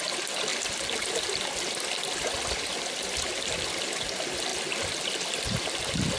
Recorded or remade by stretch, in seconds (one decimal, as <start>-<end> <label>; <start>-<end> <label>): 0.0-6.2 recorded